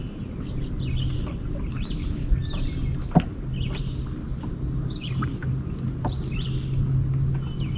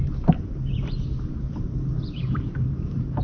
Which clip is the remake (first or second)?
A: second